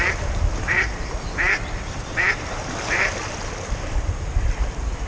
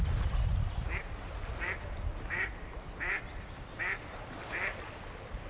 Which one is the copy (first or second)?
first